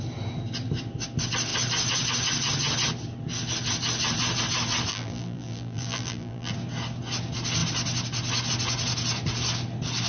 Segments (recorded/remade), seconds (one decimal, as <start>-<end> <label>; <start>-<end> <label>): 0.0-4.9 recorded; 4.9-6.5 remade; 6.5-10.1 recorded